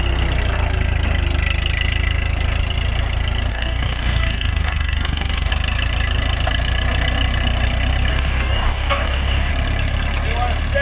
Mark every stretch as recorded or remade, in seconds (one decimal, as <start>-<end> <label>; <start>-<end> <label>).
0.0-3.5 recorded; 3.5-5.5 remade; 5.5-8.1 recorded; 8.1-9.5 remade; 9.5-10.8 recorded